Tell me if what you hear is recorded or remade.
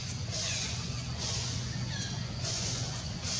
remade